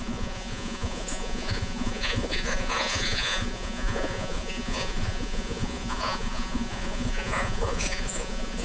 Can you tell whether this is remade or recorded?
remade